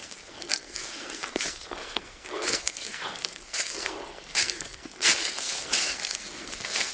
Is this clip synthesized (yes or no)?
yes